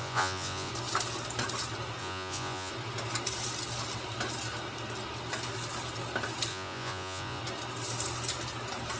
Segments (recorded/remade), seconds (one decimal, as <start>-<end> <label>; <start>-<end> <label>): 0.0-0.7 remade; 0.7-2.0 recorded; 2.0-2.7 remade; 2.7-6.5 recorded; 6.5-7.4 remade; 7.4-9.0 recorded

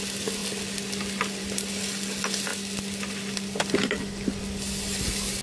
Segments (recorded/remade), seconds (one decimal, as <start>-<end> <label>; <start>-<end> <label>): 0.0-5.4 recorded

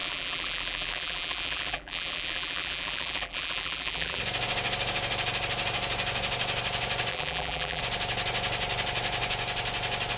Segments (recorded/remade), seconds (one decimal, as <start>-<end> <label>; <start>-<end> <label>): 0.0-4.2 remade; 4.2-7.1 recorded; 7.1-7.8 remade; 7.8-10.2 recorded

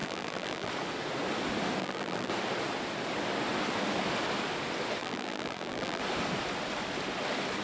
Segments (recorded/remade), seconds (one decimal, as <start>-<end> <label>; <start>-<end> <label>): 0.0-0.7 remade; 0.7-1.8 recorded; 1.8-2.3 remade; 2.3-5.0 recorded; 5.0-6.0 remade; 6.0-7.6 recorded

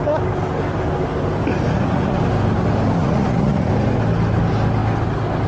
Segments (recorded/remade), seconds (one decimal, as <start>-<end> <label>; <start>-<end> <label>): 0.0-1.5 recorded; 1.5-2.2 remade; 2.2-3.0 recorded; 3.0-3.7 remade; 3.7-5.5 recorded